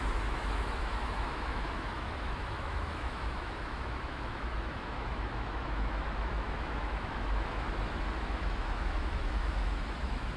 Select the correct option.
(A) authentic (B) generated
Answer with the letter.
B